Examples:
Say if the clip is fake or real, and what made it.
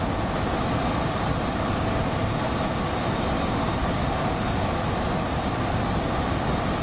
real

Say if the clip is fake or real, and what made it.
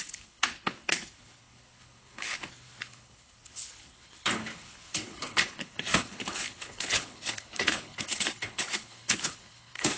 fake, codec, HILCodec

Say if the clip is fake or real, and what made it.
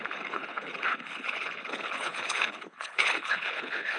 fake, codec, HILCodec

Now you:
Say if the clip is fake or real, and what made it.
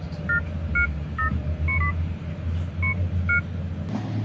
real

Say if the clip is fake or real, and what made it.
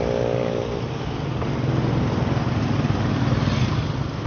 real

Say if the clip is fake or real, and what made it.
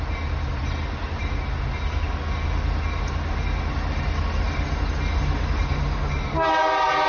real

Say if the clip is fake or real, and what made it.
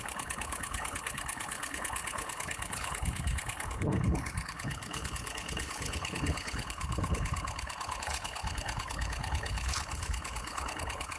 fake, codec, HILCodec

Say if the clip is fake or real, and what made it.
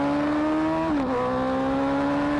real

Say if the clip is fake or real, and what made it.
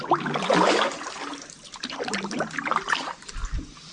real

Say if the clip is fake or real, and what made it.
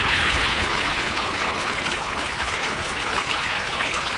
fake, codec, HILCodec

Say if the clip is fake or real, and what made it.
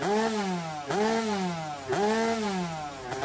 real